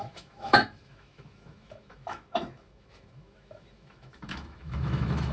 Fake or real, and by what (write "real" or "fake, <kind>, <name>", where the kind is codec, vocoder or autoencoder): fake, autoencoder, DAC-VAE